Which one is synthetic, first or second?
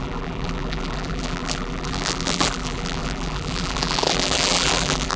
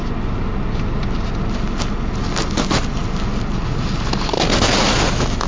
first